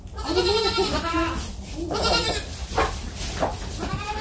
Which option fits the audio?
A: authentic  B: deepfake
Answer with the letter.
A